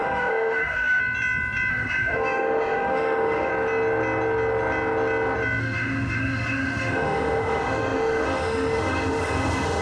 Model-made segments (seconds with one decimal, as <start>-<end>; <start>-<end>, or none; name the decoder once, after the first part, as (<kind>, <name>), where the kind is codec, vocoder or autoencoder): 0.0-1.0 (autoencoder, DAC-VAE); 1.7-3.5; 5.6-9.8